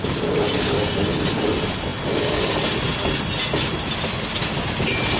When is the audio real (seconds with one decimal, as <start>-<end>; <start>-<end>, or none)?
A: 0.0-5.2

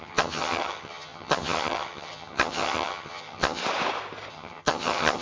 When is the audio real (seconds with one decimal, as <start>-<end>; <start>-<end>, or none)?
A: 3.6-4.3

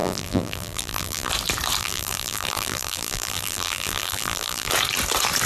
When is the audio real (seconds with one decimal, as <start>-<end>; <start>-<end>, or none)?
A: 1.3-1.8; 4.7-5.5

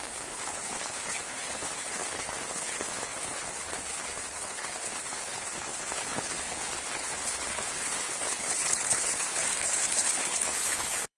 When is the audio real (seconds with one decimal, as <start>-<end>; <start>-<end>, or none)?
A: none

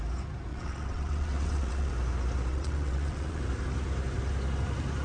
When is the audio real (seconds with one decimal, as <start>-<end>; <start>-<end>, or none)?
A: 0.0-0.5; 1.9-2.5; 3.4-5.0